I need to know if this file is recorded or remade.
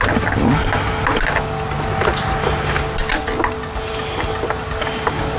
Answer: recorded